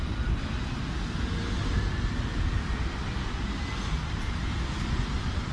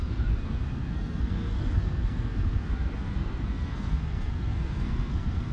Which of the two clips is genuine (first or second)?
first